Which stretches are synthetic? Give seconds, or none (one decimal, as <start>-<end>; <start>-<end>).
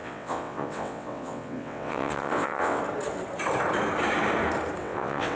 0.0-2.8; 4.8-5.4